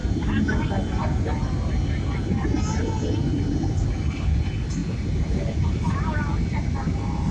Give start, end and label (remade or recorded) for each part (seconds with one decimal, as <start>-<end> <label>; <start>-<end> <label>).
0.0-7.3 recorded